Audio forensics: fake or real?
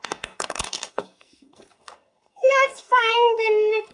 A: fake